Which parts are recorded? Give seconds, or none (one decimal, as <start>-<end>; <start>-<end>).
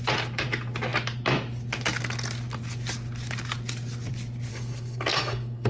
0.0-4.5